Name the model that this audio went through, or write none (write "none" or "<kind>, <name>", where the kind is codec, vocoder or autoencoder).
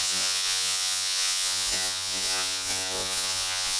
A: vocoder, Vocos